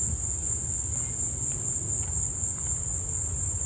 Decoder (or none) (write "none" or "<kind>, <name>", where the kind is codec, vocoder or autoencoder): none